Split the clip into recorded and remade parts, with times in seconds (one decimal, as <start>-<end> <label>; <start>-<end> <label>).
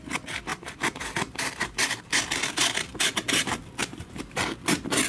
0.0-0.5 recorded; 0.5-2.0 remade; 2.0-3.8 recorded; 3.8-4.4 remade; 4.4-5.1 recorded